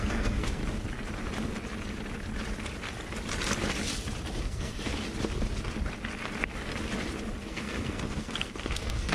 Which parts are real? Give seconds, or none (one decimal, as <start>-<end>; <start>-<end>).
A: 0.6-4.4; 4.9-7.4